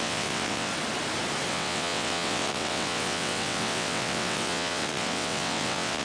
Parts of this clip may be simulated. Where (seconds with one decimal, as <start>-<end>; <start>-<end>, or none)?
0.0-0.7; 1.5-6.0